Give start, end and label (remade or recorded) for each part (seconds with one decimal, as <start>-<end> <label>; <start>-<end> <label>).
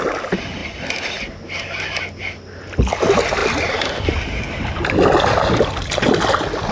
0.0-6.7 recorded